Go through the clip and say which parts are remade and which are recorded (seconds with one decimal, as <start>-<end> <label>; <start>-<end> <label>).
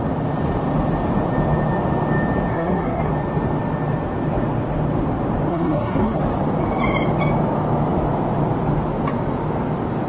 0.0-2.5 recorded; 2.5-3.1 remade; 3.1-5.5 recorded; 5.5-6.2 remade; 6.2-10.1 recorded